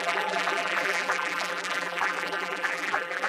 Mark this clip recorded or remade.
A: remade